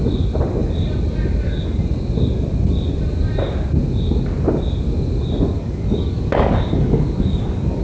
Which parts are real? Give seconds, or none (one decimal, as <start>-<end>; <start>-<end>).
0.0-5.5